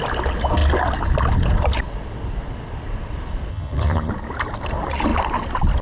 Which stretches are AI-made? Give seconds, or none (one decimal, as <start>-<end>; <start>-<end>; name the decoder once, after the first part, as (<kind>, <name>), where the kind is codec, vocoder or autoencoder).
3.5-4.1 (vocoder, HiFi-GAN)